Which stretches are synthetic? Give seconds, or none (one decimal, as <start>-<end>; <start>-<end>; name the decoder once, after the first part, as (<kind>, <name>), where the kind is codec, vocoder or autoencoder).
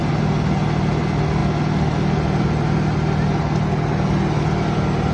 none